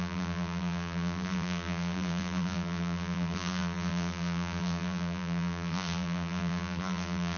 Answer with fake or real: fake